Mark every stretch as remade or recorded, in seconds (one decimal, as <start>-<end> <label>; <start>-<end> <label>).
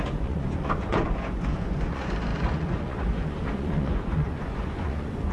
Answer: 0.0-5.3 remade